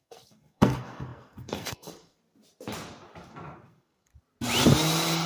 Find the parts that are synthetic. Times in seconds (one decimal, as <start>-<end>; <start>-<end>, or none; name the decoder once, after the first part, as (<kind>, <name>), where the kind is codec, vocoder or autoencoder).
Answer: 0.0-2.2 (codec, SNAC); 3.3-4.1